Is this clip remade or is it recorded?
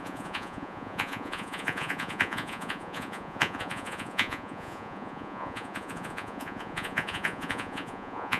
remade